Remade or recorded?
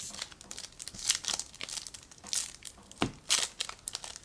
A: recorded